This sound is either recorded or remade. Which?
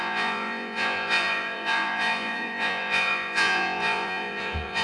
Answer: remade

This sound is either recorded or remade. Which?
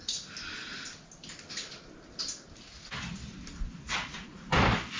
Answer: recorded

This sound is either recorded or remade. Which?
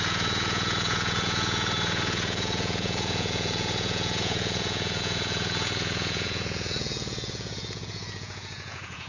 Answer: remade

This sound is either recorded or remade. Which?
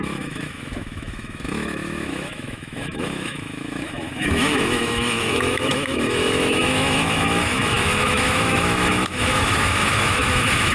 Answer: remade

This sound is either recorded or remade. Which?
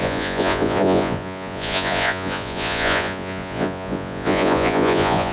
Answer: remade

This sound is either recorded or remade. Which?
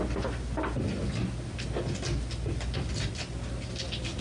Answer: recorded